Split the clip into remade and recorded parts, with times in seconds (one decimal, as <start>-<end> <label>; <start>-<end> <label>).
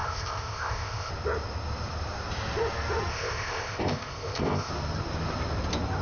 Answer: 0.0-1.1 remade; 1.1-3.1 recorded; 3.1-4.7 remade; 4.7-6.0 recorded